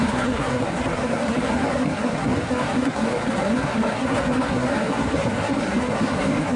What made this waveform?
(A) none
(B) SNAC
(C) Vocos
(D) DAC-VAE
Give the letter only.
B